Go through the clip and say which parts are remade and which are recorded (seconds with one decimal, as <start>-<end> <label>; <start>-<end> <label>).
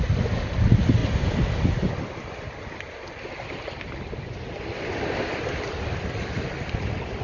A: 0.0-7.2 recorded